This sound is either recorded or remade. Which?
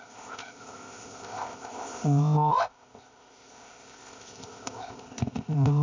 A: remade